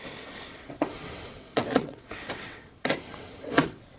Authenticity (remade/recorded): remade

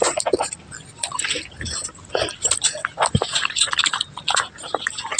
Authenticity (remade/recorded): recorded